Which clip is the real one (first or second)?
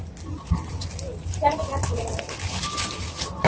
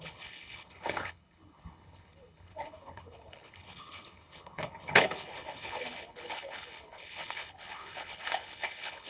first